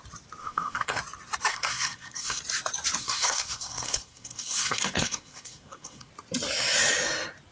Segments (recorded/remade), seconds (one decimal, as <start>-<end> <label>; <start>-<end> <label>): 0.0-0.4 recorded; 0.4-1.0 remade; 1.0-1.5 recorded; 1.5-2.4 remade; 2.4-3.0 recorded; 3.0-6.1 remade; 6.1-7.5 recorded